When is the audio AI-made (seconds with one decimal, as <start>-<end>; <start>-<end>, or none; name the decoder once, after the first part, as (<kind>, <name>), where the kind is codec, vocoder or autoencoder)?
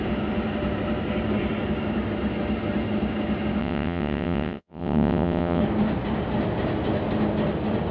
3.6-5.6 (vocoder, WaveNeXt)